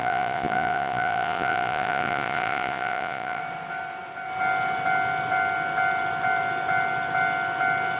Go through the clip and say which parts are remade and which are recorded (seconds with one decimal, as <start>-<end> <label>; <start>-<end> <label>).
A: 0.0-3.4 remade; 3.4-8.0 recorded